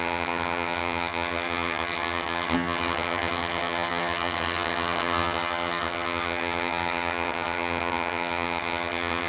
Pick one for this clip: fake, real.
fake